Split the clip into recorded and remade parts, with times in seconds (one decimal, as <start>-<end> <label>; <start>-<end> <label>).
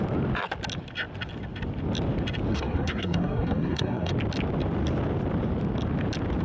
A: 0.0-2.5 recorded; 2.5-4.1 remade; 4.1-6.4 recorded